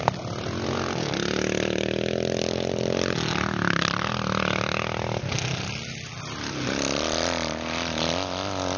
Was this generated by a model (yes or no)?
no